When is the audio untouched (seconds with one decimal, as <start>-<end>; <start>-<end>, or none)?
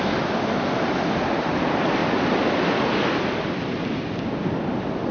0.0-5.1